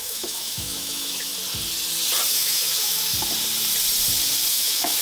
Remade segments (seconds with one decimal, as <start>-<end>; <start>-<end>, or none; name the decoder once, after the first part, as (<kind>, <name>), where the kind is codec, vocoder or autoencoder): 0.0-1.3 (autoencoder, DAC-VAE); 2.3-3.1; 4.5-5.0

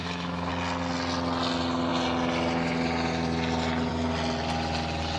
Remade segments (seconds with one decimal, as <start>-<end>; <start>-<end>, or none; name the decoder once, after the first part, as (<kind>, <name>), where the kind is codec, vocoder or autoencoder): 0.0-0.5 (autoencoder, DAC-VAE)

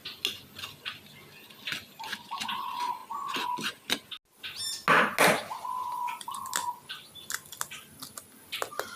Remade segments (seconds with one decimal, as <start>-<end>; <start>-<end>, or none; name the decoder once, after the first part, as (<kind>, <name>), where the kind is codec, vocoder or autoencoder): none

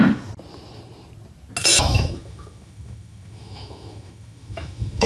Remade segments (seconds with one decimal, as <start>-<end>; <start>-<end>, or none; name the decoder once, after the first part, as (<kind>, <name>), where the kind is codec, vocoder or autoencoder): 1.6-5.1 (autoencoder, DAC-VAE)

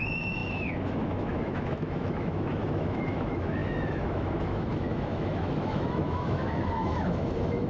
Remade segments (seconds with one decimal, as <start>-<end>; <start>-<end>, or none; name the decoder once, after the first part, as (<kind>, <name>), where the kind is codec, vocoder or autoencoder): 0.0-7.7 (autoencoder, DAC-VAE)